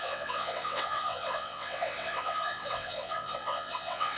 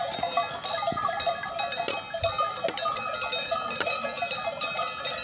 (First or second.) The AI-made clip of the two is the first